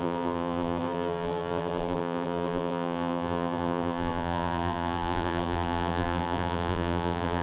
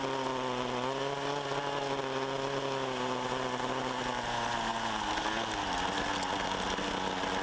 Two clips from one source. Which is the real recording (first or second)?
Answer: second